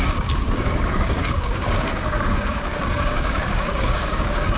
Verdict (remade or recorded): remade